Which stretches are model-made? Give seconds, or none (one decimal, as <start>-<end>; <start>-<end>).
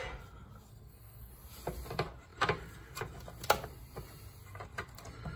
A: 0.7-1.3